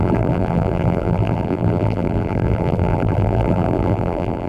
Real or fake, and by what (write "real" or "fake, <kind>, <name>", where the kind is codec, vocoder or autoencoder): fake, vocoder, BigVGAN v2